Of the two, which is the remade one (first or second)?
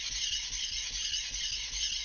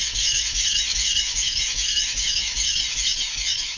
second